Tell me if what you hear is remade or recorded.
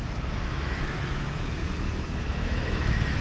remade